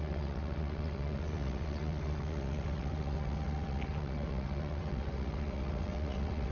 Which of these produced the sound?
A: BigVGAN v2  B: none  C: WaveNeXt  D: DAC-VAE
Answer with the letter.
C